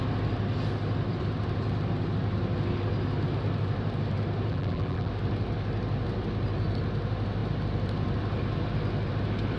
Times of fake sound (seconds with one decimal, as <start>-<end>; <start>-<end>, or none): 4.5-5.1